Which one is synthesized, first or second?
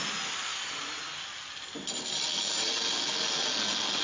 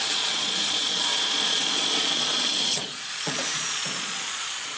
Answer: second